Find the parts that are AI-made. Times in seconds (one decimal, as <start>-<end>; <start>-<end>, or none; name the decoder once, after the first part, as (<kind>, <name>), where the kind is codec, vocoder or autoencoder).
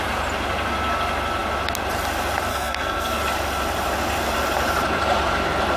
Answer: 2.5-3.2 (codec, SNAC)